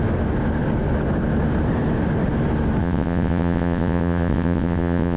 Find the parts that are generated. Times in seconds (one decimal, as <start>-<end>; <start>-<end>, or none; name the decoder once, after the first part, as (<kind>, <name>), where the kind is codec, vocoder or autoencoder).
2.8-5.2 (vocoder, WaveNeXt)